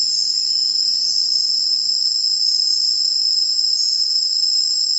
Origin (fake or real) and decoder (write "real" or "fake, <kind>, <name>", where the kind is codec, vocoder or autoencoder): real